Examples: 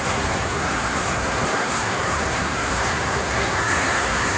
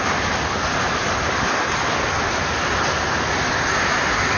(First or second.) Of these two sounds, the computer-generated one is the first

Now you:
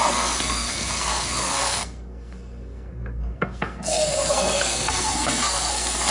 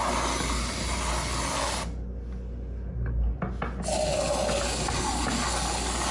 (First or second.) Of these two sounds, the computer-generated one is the first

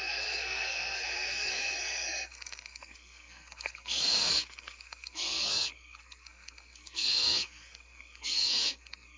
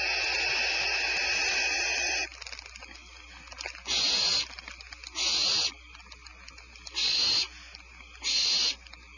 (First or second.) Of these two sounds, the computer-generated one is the first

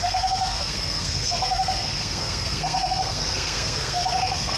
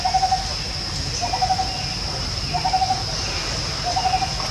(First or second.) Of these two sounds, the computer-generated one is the first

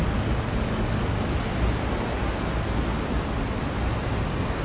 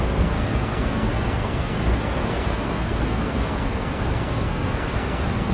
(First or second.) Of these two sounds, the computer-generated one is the second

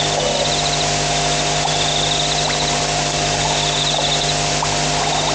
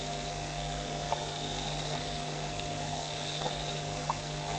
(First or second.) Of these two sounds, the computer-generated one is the second